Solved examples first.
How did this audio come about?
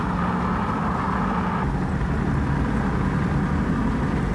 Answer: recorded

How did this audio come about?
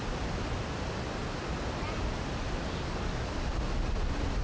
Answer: recorded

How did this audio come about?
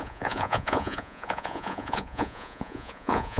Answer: remade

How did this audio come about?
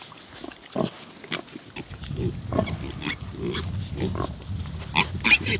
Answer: recorded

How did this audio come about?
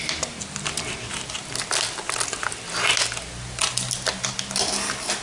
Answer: recorded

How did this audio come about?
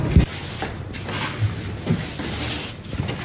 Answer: recorded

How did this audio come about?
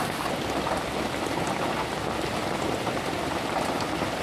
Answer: recorded